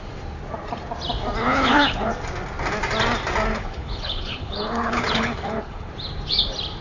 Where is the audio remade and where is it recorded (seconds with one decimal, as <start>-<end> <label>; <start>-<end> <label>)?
0.0-1.4 recorded; 1.4-2.1 remade; 2.1-3.5 recorded; 3.5-5.9 remade; 5.9-6.8 recorded